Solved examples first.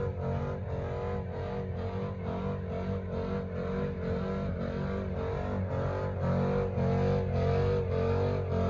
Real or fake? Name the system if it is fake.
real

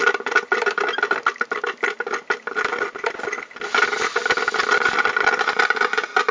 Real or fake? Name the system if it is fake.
real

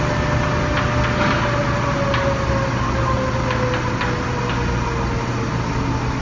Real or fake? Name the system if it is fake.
real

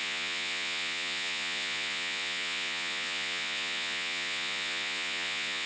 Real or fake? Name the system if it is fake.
fake, vocoder, Vocos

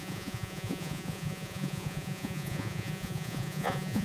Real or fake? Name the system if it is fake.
fake, vocoder, Vocos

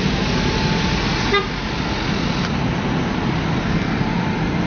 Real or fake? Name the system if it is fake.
real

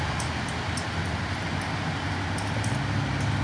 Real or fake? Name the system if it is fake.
real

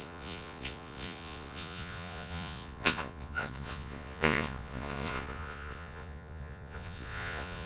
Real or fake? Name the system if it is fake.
fake, vocoder, Vocos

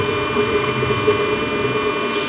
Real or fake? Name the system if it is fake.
real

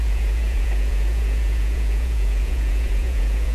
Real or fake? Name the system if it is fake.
fake, vocoder, Vocos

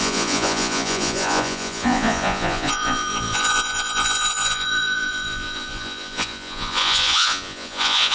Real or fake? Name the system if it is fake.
fake, vocoder, Vocos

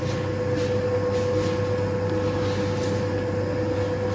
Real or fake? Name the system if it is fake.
real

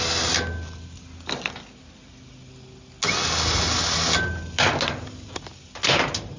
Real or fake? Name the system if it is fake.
real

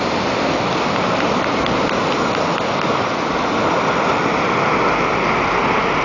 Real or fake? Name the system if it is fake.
real